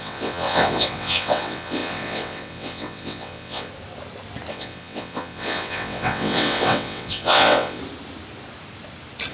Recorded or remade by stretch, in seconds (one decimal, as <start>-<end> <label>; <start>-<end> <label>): 0.0-3.7 remade; 3.7-4.5 recorded; 4.5-7.8 remade; 7.8-9.3 recorded